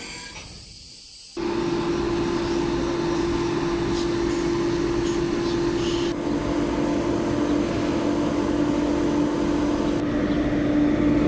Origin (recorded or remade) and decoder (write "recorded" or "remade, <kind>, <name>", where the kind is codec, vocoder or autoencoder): recorded